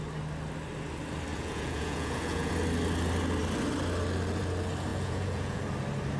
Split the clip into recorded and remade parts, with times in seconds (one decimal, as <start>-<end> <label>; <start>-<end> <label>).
0.0-1.3 recorded; 1.3-2.5 remade; 2.5-4.9 recorded; 4.9-5.6 remade; 5.6-6.2 recorded

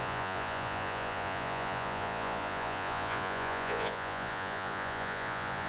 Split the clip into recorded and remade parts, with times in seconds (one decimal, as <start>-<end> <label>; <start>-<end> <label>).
0.0-5.7 remade